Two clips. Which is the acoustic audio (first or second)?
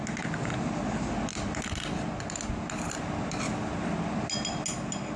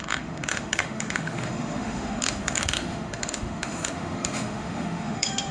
first